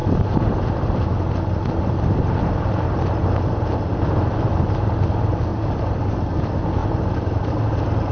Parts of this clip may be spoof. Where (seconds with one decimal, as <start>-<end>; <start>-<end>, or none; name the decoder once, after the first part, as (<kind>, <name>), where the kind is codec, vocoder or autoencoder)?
none